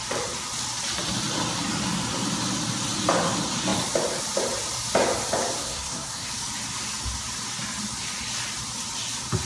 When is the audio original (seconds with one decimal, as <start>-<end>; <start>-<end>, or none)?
0.0-5.6; 6.3-9.5